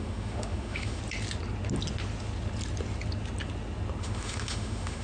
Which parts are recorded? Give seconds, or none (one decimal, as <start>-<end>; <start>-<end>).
1.0-4.0